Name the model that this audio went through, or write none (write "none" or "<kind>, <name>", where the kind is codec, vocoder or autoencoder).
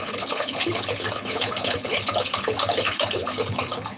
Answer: codec, HILCodec